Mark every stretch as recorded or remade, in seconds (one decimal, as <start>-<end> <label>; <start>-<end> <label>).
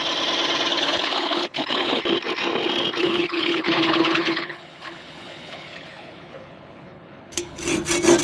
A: 0.0-0.7 recorded; 0.7-2.0 remade; 2.0-3.0 recorded; 3.0-7.6 remade; 7.6-8.2 recorded